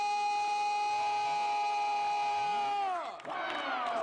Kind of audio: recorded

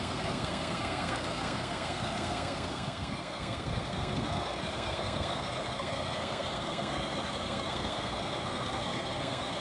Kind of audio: remade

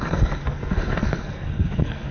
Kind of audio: remade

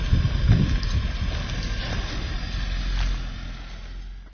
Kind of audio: recorded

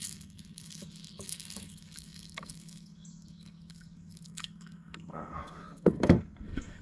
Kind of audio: remade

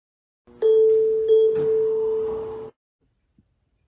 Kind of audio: recorded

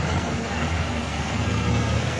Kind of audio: remade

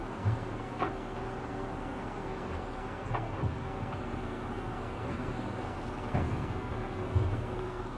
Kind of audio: remade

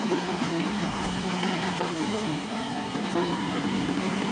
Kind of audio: remade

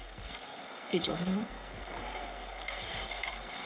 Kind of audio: remade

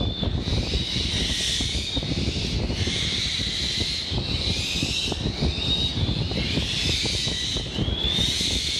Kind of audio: recorded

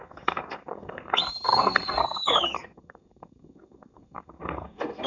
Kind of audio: remade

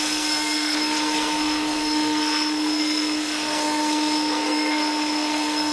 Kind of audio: remade